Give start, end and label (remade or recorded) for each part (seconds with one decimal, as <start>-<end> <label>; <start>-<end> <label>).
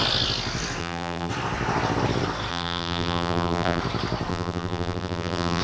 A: 0.0-0.8 recorded; 0.8-1.3 remade; 1.3-2.5 recorded; 2.5-3.8 remade; 3.8-4.3 recorded; 4.3-5.6 remade